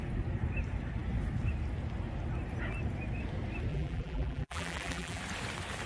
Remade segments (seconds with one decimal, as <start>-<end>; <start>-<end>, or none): 3.7-5.2